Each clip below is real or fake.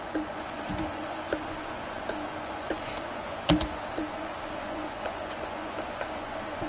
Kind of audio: fake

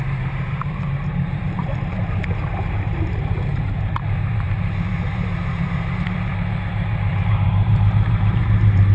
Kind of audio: fake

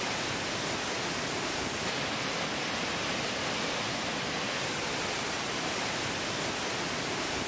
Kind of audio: real